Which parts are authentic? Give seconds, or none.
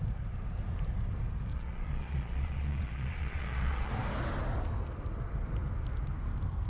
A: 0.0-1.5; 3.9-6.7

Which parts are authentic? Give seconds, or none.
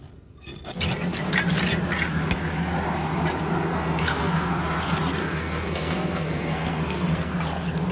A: 0.0-3.7; 4.5-5.2; 7.3-7.9